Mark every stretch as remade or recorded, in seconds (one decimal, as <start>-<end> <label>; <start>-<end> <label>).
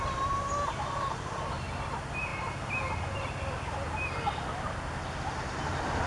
0.0-6.1 recorded